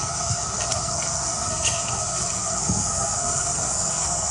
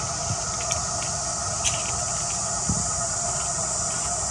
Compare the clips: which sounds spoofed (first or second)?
first